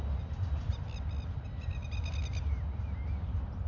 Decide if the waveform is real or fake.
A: real